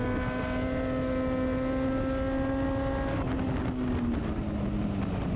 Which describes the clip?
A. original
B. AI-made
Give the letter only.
A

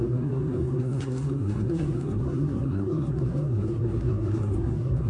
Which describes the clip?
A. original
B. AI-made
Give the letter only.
B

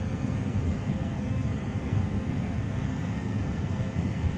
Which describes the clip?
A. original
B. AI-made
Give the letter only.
B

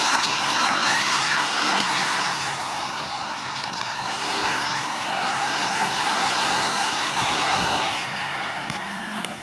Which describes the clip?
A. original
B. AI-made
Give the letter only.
B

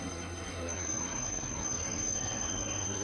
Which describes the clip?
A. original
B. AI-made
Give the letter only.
B